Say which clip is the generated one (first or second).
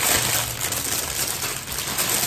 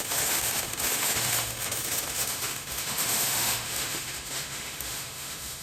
second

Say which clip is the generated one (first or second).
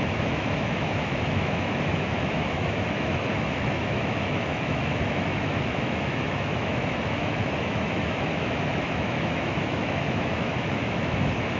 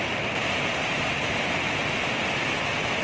first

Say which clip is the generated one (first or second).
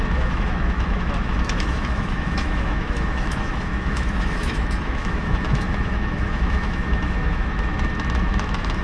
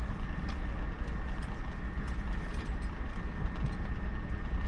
first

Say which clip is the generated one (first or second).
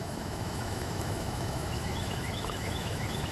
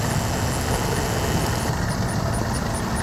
first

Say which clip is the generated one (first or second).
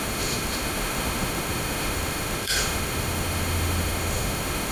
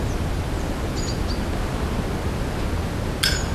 first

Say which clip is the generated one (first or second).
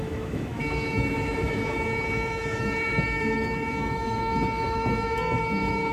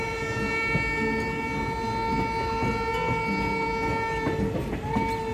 first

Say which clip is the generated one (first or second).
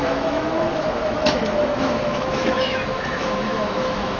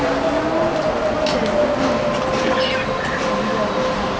first